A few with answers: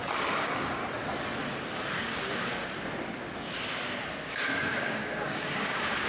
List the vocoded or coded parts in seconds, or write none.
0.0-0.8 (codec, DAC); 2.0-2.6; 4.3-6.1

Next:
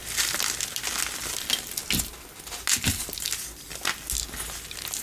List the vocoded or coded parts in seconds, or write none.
none

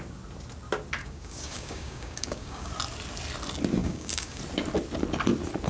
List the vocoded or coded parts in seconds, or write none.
1.0-2.7 (codec, DAC); 3.8-4.4

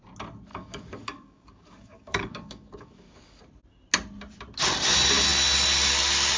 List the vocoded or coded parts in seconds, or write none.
0.5-3.4 (codec, DAC)

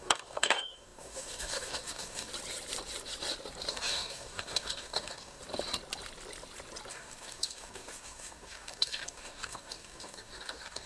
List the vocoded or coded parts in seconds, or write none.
0.0-2.3 (codec, DAC); 3.7-5.4; 6.9-10.9

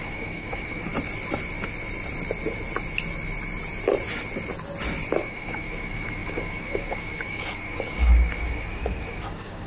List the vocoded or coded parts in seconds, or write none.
0.0-0.9 (codec, DAC); 5.1-9.7

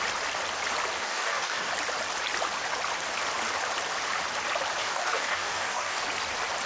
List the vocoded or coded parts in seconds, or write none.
1.0-1.7 (codec, DAC); 4.8-6.0